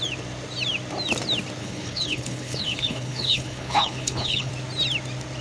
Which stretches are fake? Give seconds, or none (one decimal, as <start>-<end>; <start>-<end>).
1.6-4.5